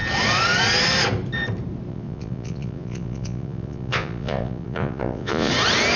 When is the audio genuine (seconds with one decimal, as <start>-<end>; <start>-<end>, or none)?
0.0-1.9; 5.5-6.0